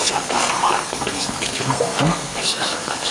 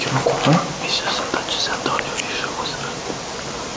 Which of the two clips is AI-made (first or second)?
first